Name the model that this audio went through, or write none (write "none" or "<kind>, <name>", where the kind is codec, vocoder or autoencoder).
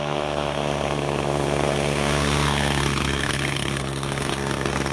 codec, SNAC